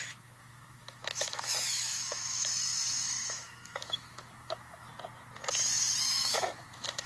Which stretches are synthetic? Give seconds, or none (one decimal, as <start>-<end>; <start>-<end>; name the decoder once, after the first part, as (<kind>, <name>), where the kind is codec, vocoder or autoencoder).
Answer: 0.0-4.9 (autoencoder, DAC-VAE); 6.1-7.1